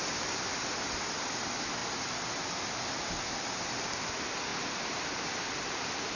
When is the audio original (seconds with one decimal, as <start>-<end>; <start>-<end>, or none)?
0.0-6.2